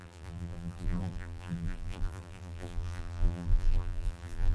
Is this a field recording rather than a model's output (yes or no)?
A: no